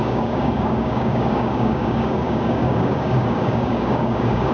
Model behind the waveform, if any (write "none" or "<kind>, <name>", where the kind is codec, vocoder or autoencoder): codec, DAC